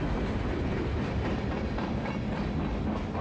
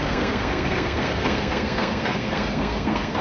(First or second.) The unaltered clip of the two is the first